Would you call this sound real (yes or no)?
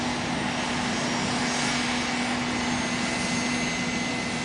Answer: yes